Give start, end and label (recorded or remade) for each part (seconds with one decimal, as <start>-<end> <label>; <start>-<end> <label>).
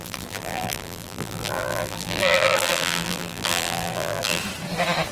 0.0-4.4 remade; 4.4-5.1 recorded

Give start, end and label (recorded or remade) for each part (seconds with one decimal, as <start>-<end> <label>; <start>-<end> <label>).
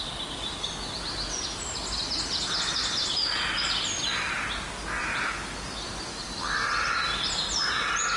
0.0-8.2 recorded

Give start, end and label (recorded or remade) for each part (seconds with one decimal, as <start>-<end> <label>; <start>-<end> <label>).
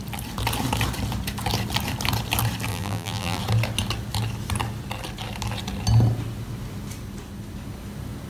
0.0-2.7 recorded; 2.7-3.4 remade; 3.4-8.3 recorded